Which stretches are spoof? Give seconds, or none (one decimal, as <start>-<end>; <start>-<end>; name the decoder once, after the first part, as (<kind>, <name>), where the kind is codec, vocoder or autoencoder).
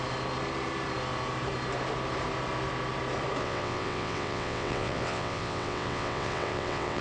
3.4-7.0 (vocoder, WaveNeXt)